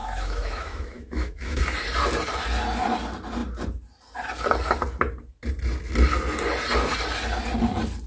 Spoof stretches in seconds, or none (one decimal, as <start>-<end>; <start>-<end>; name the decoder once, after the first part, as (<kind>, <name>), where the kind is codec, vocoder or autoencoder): 0.0-1.6 (autoencoder, DAC-VAE)